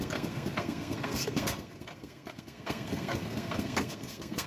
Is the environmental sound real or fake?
fake